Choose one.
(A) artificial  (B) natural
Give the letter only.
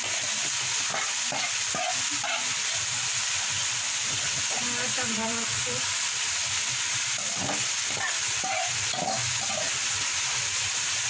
A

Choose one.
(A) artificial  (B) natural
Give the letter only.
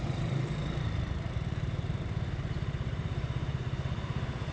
A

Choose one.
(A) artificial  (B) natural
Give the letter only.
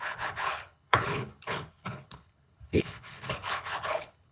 A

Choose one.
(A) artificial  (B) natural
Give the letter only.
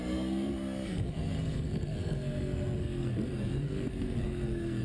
A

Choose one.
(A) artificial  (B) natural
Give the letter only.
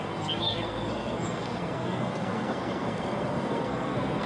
A